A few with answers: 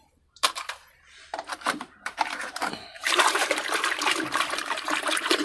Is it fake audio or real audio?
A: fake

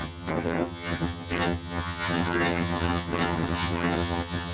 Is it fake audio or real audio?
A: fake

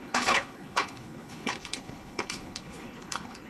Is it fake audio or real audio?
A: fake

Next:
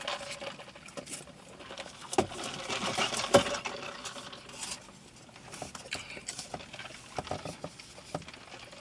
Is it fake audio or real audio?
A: real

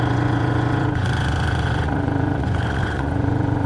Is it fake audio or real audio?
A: fake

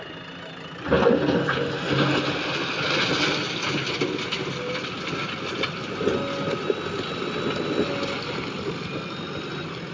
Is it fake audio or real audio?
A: real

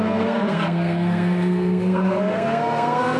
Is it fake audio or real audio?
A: fake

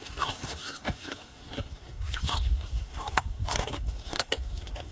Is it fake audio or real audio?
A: fake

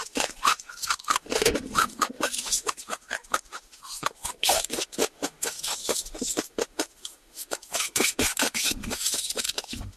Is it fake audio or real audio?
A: fake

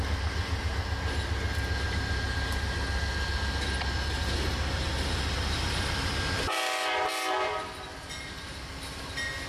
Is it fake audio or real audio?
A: real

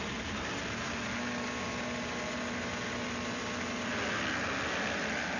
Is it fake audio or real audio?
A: real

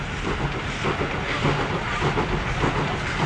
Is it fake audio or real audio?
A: real